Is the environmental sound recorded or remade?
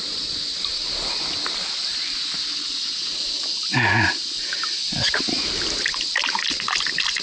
recorded